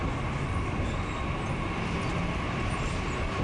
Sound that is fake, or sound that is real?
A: real